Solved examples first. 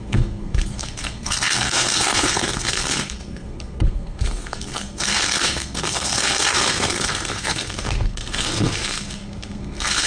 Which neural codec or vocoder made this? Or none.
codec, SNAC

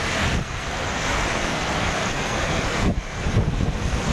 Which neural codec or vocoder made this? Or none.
codec, SNAC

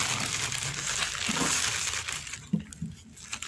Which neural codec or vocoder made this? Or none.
none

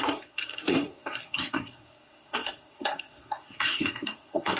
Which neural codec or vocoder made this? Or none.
codec, SNAC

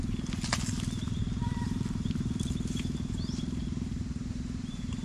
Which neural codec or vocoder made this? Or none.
none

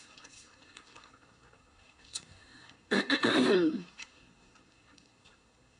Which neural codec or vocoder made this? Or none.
codec, SNAC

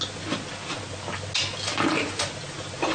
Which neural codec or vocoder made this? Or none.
none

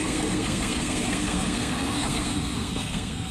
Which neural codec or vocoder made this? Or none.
codec, SNAC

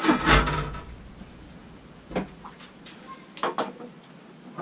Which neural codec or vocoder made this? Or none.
none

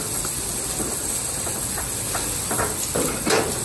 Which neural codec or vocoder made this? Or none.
none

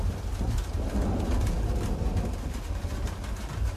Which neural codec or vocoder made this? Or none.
none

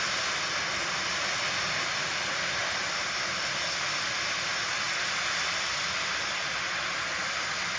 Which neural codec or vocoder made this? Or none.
none